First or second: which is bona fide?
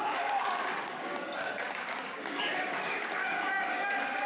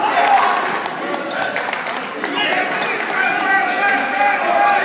second